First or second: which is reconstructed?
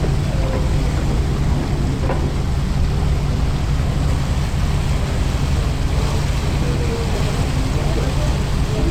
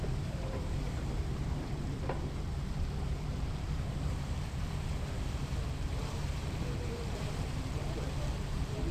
second